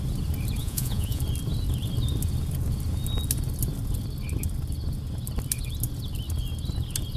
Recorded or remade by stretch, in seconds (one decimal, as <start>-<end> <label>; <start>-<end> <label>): 0.0-0.6 recorded; 0.6-1.2 remade; 1.2-7.2 recorded